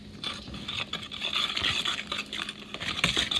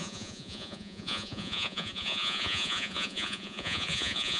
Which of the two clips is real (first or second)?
first